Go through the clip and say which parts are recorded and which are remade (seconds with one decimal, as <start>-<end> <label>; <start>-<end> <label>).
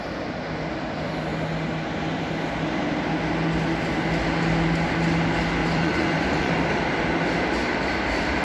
0.0-5.6 recorded; 5.6-6.5 remade; 6.5-8.4 recorded